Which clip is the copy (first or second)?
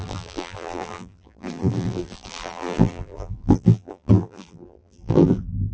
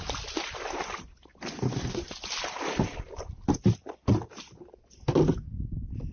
first